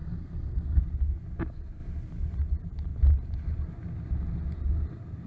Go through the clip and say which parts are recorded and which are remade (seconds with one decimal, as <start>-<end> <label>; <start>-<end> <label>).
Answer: 0.0-0.8 remade; 0.8-5.3 recorded